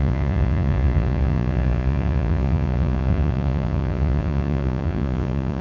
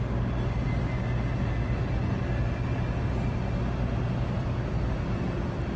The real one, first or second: second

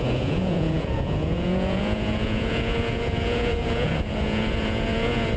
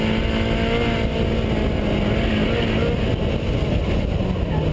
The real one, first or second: second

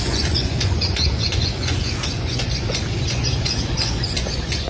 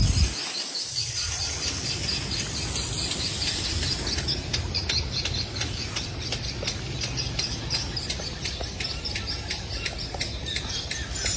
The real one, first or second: second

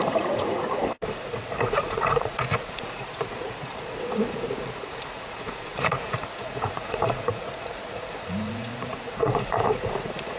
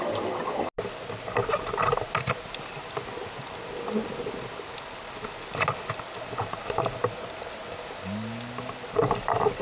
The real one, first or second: second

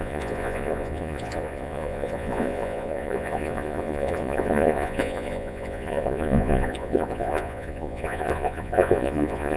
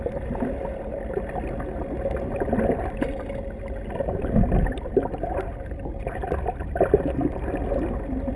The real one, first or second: second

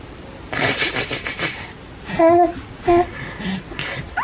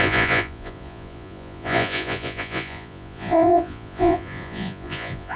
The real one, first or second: first